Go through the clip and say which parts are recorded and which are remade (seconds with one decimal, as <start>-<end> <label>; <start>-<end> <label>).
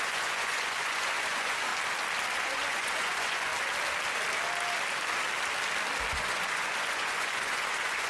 0.0-1.7 remade; 1.7-2.4 recorded; 2.4-3.5 remade; 3.5-6.1 recorded; 6.1-8.1 remade